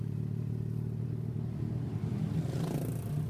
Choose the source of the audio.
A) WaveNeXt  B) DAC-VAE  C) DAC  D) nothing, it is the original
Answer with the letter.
D